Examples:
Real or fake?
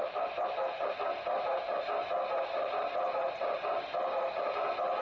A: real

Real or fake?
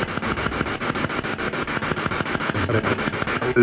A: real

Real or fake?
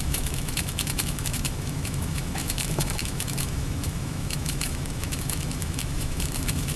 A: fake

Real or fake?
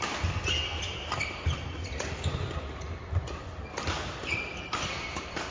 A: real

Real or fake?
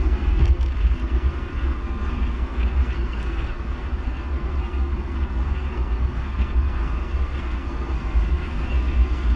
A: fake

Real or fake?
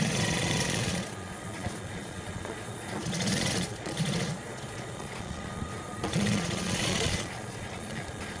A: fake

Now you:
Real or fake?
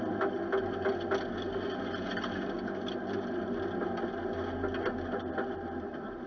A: real